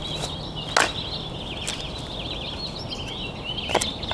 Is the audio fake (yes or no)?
no